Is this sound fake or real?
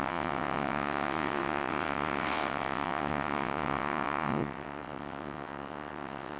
fake